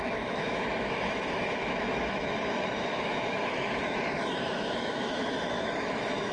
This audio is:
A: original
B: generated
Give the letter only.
B